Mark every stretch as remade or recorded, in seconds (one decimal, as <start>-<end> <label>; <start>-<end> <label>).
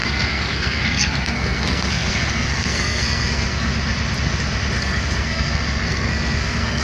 0.0-3.7 remade; 3.7-4.8 recorded; 4.8-6.8 remade